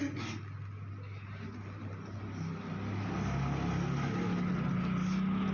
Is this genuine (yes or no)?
yes